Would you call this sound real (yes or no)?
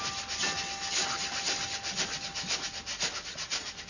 yes